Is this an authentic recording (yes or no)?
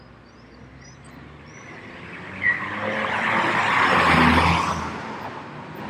yes